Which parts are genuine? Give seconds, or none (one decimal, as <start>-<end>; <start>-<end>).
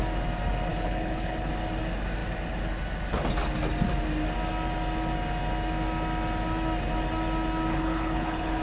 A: 0.0-0.7; 1.5-7.7